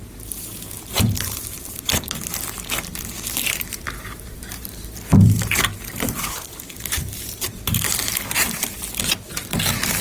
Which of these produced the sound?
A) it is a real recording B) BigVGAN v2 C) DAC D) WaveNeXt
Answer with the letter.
B